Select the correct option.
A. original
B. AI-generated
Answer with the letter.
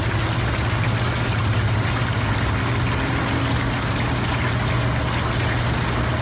A